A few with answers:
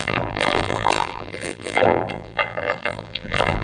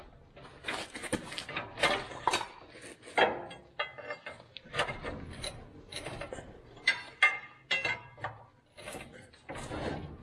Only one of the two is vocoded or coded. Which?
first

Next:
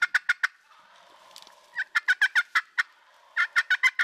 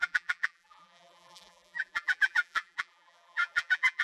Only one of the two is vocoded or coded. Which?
second